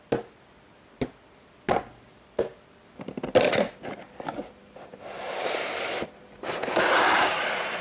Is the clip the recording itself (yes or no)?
yes